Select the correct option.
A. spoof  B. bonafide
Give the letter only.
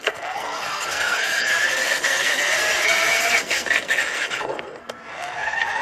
A